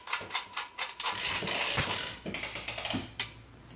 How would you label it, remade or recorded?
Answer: recorded